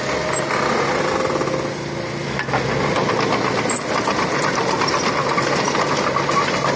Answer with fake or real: real